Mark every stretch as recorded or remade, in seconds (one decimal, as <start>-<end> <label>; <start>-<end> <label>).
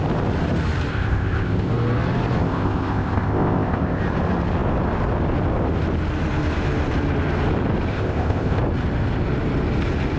0.0-0.9 recorded; 0.9-1.7 remade; 1.7-2.4 recorded; 2.4-4.0 remade; 4.0-7.9 recorded; 7.9-8.6 remade; 8.6-10.2 recorded